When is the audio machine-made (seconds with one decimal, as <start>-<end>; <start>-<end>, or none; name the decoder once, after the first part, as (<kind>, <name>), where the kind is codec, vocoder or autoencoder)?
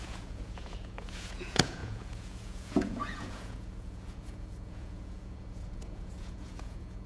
0.0-7.1 (vocoder, Vocos)